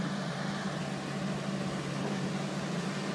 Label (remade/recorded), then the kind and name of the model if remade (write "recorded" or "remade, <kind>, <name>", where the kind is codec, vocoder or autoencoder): recorded